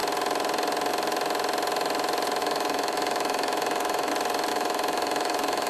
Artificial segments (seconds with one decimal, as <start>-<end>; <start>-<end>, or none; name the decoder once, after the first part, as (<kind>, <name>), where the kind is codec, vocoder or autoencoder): 2.4-4.1 (autoencoder, DAC-VAE); 4.5-5.7